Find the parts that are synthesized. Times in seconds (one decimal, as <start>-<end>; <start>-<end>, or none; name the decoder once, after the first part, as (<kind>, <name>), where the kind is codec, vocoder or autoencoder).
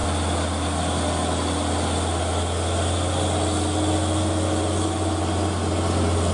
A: none